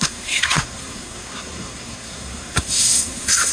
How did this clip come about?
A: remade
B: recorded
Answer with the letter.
A